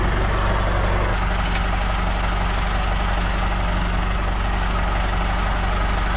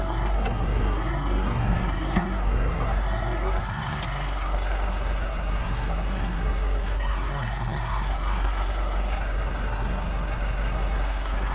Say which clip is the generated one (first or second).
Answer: second